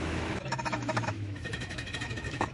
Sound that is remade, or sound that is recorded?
remade